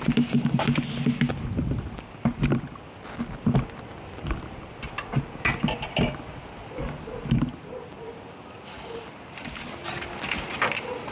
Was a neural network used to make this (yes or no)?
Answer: no